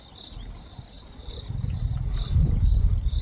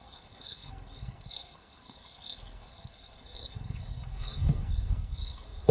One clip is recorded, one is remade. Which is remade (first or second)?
second